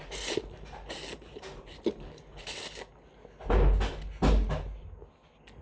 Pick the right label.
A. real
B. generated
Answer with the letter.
A